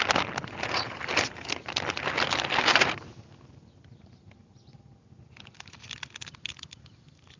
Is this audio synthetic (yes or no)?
no